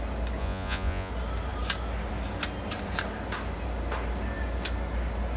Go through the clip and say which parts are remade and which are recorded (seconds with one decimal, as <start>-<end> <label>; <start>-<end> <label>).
0.0-0.4 recorded; 0.4-1.1 remade; 1.1-5.4 recorded